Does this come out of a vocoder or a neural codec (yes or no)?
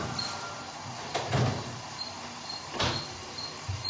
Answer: no